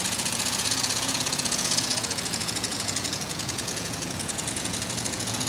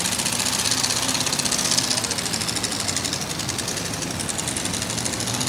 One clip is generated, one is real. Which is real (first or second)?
second